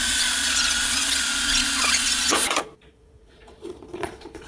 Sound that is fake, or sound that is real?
fake